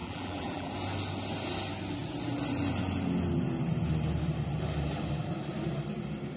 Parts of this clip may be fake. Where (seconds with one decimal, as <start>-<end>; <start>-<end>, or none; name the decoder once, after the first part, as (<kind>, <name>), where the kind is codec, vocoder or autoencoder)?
0.0-0.7 (vocoder, BigVGAN v2)